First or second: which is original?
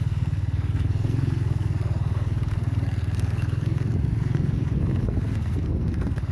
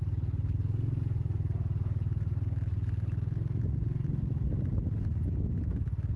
second